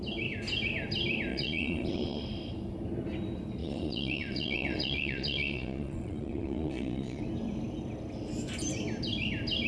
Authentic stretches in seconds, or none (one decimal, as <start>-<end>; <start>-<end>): 0.0-1.3; 2.2-3.6; 7.2-9.7